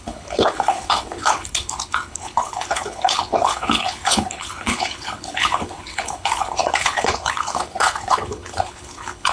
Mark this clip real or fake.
fake